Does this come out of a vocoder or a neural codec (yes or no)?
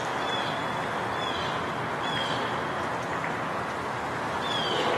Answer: no